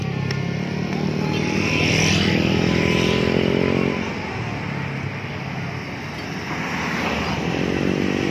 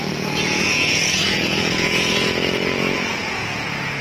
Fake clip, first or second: second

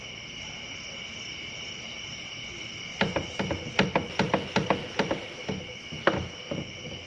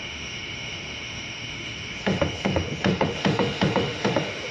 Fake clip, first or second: second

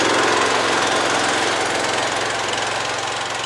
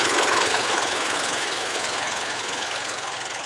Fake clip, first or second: second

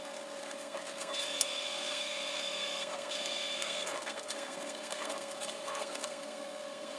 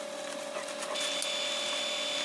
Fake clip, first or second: first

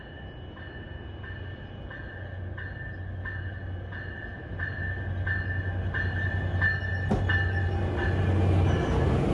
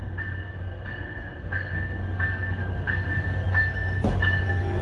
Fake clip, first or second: second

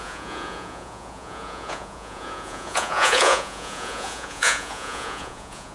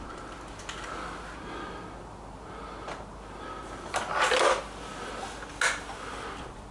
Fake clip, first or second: first